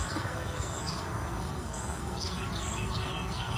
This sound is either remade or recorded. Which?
remade